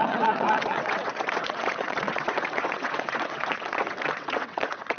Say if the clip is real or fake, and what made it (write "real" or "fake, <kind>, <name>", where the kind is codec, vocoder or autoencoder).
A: fake, vocoder, WaveNeXt